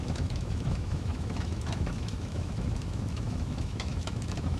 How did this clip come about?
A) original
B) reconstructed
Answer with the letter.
B